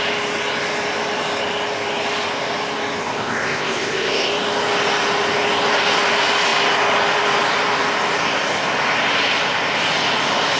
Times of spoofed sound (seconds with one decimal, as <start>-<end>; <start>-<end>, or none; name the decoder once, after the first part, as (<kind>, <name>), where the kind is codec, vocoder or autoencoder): 3.0-4.3 (codec, ZipCodec)